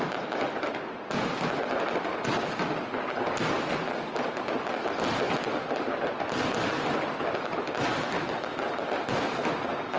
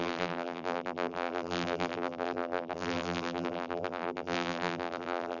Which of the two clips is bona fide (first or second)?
first